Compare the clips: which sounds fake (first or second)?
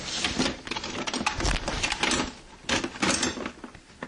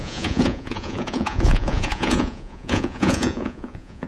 second